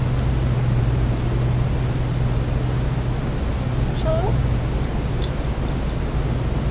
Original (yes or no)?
yes